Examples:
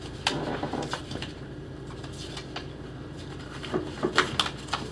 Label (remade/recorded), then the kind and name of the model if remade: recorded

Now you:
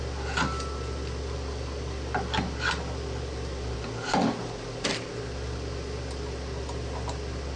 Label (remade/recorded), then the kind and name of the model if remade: recorded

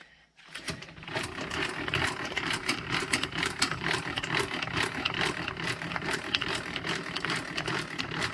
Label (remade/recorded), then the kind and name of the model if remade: remade, vocoder, BigVGAN v2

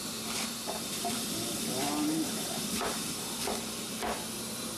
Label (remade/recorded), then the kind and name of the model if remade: remade, vocoder, BigVGAN v2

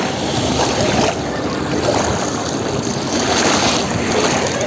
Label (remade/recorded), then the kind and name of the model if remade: recorded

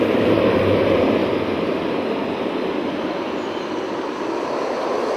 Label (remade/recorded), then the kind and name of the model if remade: remade, vocoder, BigVGAN v2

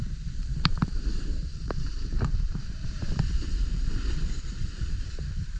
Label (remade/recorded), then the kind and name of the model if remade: remade, vocoder, BigVGAN v2